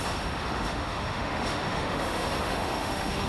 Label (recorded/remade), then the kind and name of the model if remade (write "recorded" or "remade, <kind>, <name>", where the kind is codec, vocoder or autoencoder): remade, autoencoder, DAC-VAE